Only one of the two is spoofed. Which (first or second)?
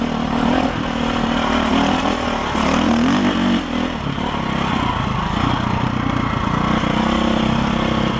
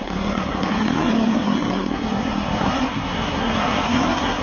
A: second